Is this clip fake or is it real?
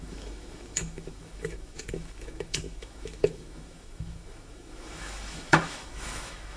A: fake